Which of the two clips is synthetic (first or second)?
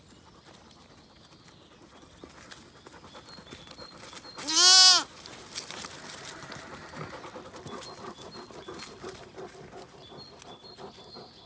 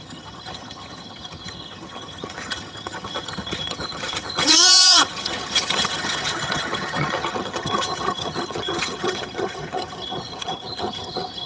second